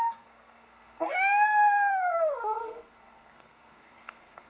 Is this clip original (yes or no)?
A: no